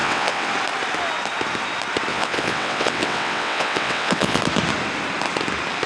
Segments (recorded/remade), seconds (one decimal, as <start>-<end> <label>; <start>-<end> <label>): 0.0-0.5 remade; 0.5-2.1 recorded; 2.1-4.4 remade; 4.4-5.9 recorded